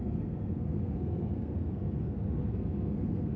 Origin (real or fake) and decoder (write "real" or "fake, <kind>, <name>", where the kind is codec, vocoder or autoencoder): fake, codec, SNAC